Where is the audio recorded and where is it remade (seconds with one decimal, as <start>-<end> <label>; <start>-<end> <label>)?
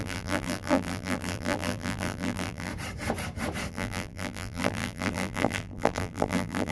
0.0-2.7 remade; 2.7-3.7 recorded; 3.7-6.7 remade